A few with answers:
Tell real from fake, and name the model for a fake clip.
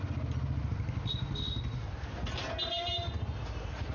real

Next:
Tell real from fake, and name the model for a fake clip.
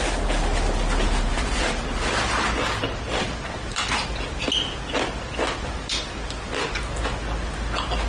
real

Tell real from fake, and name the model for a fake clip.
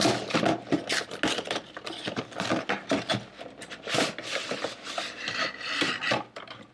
real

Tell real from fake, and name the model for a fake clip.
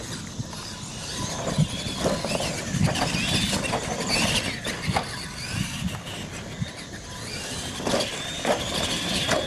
real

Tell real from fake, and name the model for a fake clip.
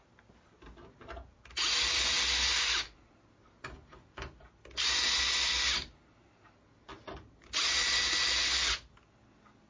real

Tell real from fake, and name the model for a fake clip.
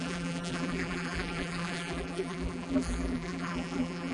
fake, vocoder, BigVGAN v2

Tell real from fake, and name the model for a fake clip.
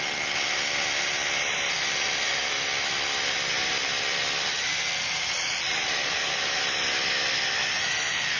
real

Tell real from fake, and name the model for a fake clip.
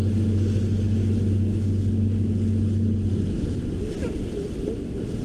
real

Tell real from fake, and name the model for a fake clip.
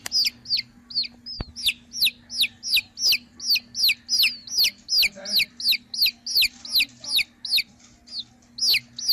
real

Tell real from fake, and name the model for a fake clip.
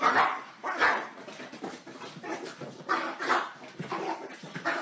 fake, vocoder, BigVGAN v2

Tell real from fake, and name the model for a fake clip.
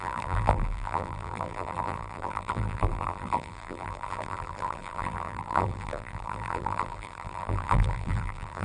fake, vocoder, BigVGAN v2